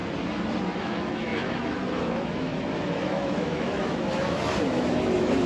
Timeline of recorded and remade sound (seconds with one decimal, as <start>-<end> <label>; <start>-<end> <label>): 0.0-0.8 recorded; 0.8-2.5 remade; 2.5-3.0 recorded; 3.0-5.5 remade